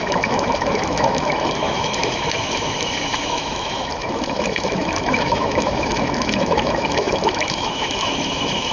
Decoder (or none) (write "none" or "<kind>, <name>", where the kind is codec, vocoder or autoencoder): autoencoder, DAC-VAE